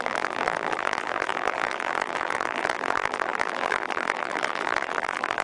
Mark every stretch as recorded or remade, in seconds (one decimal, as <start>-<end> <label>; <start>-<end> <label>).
0.0-5.4 remade